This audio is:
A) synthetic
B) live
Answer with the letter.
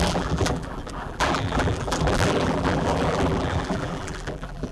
A